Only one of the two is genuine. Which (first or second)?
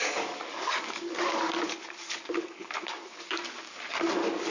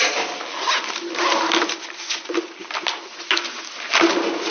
second